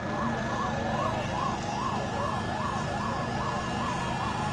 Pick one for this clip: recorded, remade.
recorded